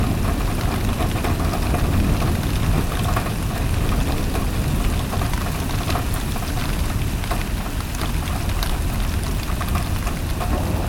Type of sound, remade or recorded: recorded